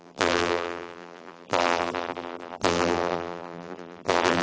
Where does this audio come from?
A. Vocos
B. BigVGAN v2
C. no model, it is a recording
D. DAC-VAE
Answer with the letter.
B